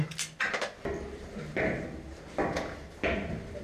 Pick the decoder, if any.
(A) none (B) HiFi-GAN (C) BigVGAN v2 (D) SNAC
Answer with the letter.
A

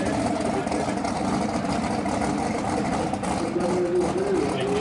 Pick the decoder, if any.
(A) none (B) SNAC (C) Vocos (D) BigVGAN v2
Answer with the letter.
A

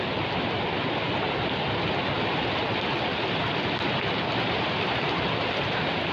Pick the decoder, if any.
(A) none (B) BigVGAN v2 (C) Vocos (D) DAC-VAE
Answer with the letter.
A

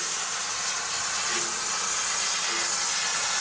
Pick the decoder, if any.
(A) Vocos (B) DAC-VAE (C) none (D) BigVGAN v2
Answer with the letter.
C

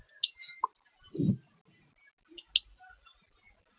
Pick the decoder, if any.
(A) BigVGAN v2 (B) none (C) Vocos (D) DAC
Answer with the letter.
B